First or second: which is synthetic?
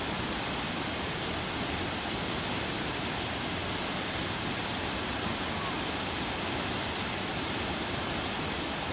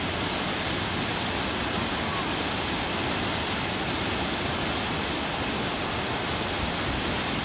first